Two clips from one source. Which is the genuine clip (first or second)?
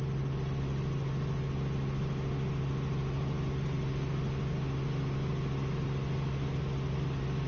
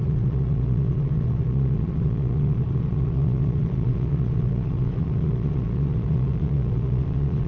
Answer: first